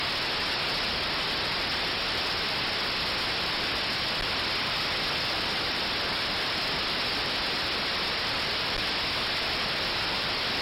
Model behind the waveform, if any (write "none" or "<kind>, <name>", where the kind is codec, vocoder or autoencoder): none